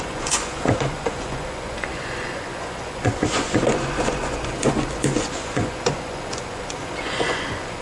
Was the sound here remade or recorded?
remade